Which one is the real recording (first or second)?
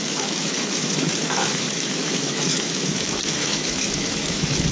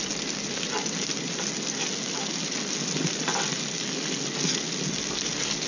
second